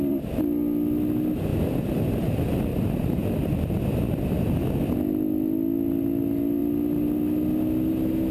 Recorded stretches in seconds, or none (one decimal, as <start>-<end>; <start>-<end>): 0.0-2.7; 3.3-8.3